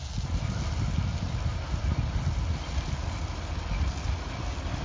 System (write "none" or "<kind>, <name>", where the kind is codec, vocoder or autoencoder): none